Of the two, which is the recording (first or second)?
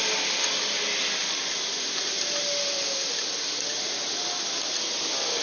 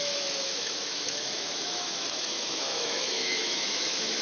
first